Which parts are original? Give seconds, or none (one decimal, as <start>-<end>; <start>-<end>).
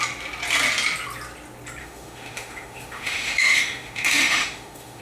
0.0-1.8